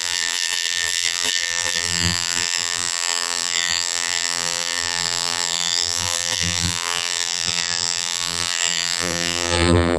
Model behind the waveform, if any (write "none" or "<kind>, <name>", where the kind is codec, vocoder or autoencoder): vocoder, BigVGAN v2